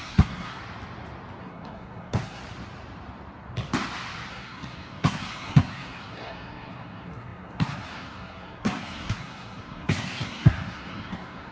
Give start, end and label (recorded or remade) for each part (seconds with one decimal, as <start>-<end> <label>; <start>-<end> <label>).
0.0-0.6 remade; 0.6-1.4 recorded; 1.4-2.4 remade; 2.4-4.3 recorded; 4.3-11.5 remade